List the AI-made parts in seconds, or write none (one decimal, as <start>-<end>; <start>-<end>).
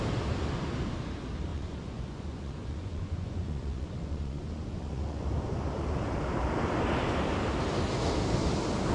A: 1.5-5.3